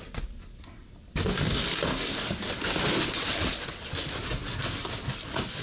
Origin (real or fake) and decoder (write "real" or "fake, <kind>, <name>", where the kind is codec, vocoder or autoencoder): real